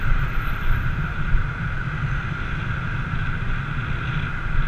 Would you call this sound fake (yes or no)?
no